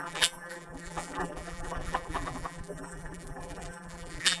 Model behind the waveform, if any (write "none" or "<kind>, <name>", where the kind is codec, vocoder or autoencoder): vocoder, BigVGAN v2